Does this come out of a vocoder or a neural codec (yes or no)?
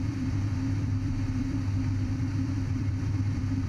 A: yes